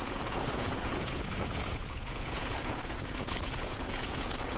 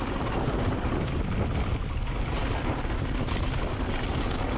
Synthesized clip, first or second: first